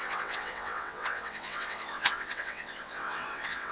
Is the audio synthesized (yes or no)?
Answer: yes